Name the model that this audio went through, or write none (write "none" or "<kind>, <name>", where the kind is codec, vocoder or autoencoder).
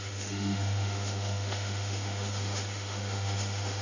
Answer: autoencoder, DAC-VAE